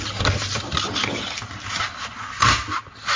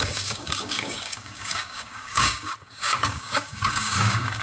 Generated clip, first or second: second